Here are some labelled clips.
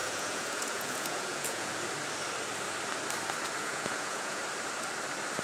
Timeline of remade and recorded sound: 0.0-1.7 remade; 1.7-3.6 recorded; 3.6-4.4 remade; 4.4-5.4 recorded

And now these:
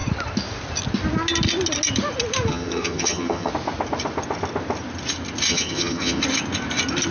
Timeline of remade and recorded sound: 0.0-2.5 recorded; 2.5-3.5 remade; 3.5-5.5 recorded; 5.5-6.2 remade; 6.2-7.1 recorded

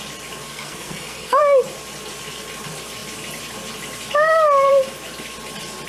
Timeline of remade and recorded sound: 0.0-0.5 recorded; 0.5-1.4 remade; 1.4-5.9 recorded

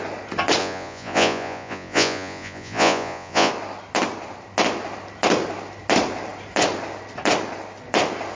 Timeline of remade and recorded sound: 0.0-0.6 recorded; 0.6-3.5 remade; 3.5-8.3 recorded

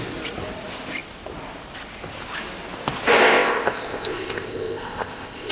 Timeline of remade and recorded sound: 0.0-3.2 recorded; 3.2-5.5 remade